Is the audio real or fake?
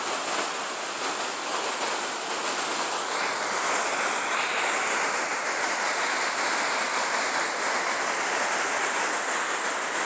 real